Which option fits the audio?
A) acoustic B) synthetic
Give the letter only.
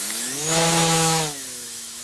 B